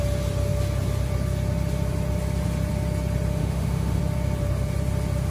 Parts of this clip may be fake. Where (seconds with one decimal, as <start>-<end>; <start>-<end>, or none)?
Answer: 3.4-4.0

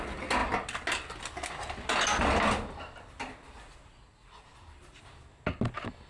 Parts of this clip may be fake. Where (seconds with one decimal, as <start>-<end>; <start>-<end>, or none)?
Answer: none

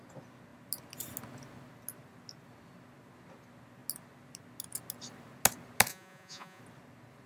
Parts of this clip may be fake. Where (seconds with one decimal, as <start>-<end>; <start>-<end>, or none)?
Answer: 5.9-6.6

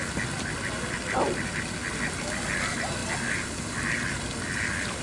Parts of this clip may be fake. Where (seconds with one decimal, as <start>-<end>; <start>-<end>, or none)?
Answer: none

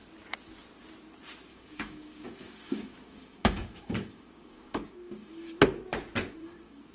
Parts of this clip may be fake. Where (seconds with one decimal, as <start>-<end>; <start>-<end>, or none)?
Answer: 1.5-5.6; 6.4-6.9